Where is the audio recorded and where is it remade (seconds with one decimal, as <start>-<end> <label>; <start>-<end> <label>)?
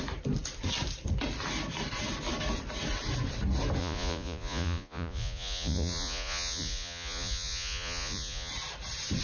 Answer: 0.0-3.8 recorded; 3.8-8.5 remade; 8.5-9.2 recorded